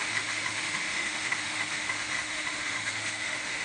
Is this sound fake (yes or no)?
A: yes